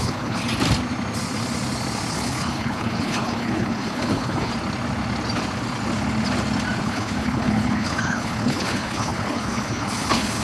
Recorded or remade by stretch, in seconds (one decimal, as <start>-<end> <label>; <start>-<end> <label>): 0.0-0.4 remade; 0.4-2.1 recorded; 2.1-4.5 remade; 4.5-6.8 recorded; 6.8-10.4 remade